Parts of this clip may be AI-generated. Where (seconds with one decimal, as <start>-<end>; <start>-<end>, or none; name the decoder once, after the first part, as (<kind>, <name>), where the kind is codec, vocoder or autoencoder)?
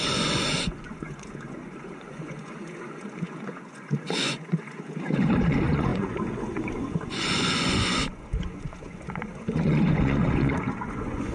0.0-11.3 (vocoder, Vocos)